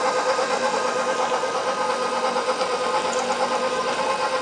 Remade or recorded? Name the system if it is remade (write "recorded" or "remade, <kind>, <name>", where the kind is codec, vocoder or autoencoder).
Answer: recorded